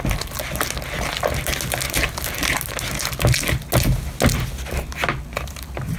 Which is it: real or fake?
real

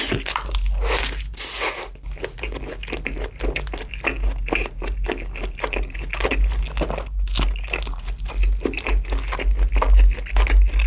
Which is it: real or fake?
real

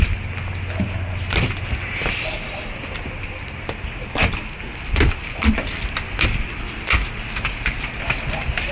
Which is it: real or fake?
real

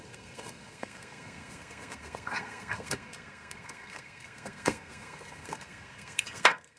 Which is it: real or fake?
fake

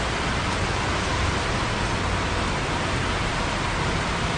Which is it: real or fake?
real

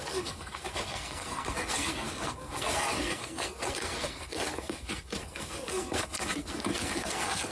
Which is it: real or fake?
fake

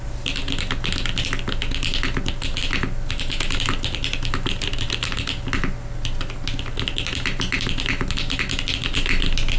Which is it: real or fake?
real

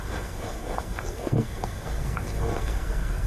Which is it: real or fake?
fake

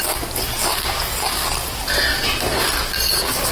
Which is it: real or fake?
real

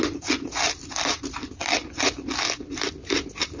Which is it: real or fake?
real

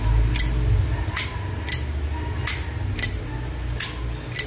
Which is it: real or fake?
real